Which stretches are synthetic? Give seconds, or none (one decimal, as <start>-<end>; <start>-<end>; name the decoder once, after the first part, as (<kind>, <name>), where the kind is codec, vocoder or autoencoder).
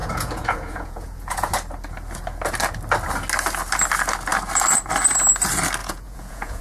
0.0-1.5 (vocoder, Vocos); 5.8-6.6